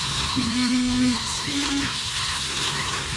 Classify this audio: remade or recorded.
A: remade